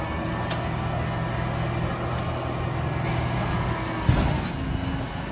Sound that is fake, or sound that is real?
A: real